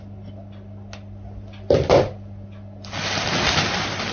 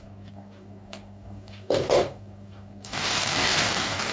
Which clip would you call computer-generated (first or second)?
second